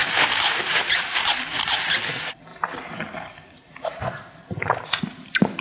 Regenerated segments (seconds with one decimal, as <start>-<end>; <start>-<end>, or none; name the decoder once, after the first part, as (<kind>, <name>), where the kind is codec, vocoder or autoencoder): 0.0-1.3 (vocoder, BigVGAN v2); 2.5-5.6